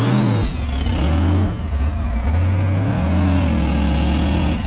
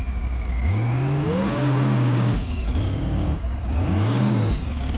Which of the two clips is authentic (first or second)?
first